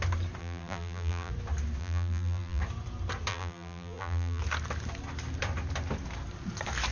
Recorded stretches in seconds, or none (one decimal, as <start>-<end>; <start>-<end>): 0.0-0.4; 1.3-1.8; 2.6-3.3; 4.4-6.9